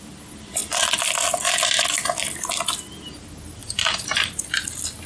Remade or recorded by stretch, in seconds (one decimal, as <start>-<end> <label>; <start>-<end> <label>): 0.0-3.6 recorded; 3.6-4.4 remade; 4.4-5.1 recorded